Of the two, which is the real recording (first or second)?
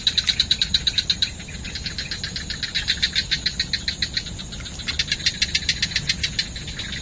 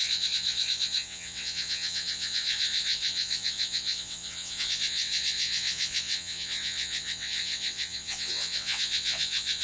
first